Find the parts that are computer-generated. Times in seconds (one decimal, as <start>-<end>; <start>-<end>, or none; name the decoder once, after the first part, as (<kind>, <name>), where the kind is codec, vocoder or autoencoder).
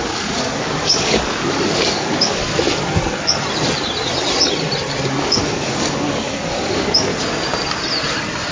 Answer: 0.0-2.4 (codec, DAC); 5.2-7.1